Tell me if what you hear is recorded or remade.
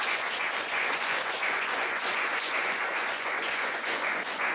remade